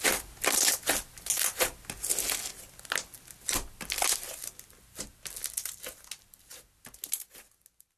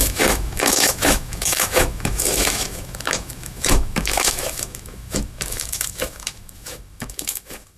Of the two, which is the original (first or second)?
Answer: first